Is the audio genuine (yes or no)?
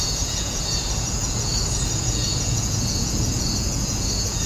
no